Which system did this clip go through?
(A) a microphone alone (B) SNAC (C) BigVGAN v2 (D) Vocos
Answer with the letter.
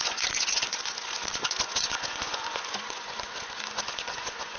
D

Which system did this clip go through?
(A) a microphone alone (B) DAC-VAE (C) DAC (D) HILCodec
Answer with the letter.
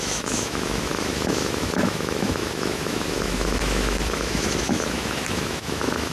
B